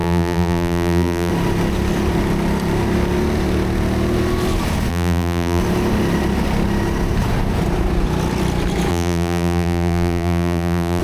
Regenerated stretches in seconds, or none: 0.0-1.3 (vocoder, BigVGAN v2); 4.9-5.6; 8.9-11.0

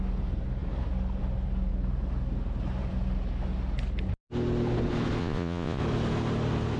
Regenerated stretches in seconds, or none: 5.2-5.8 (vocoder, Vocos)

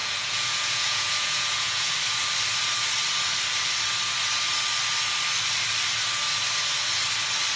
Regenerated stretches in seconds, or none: 0.0-1.9 (vocoder, Vocos)

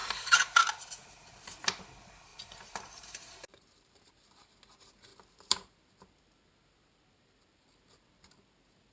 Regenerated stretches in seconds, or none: 0.0-0.6 (vocoder, BigVGAN v2); 2.3-4.1; 5.1-5.9

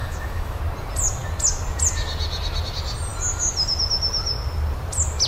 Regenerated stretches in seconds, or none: 0.0-0.6 (autoencoder, DAC-VAE)

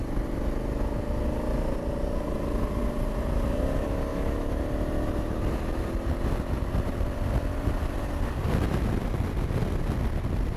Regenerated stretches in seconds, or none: 4.1-4.6 (autoencoder, DAC-VAE)

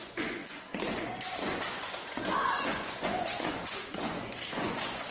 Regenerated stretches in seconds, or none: 0.0-5.1 (vocoder, Vocos)